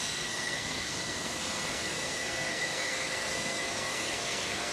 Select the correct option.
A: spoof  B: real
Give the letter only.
A